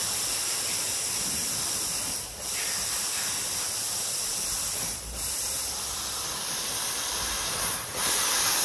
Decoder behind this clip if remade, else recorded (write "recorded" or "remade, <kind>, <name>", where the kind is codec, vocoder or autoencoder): remade, vocoder, BigVGAN v2